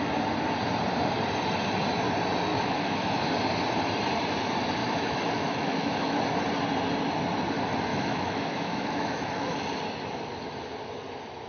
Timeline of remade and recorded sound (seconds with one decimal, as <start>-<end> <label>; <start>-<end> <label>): 0.0-2.5 recorded; 2.5-3.2 remade; 3.2-4.8 recorded; 4.8-6.2 remade; 6.2-7.9 recorded; 7.9-9.6 remade; 9.6-11.5 recorded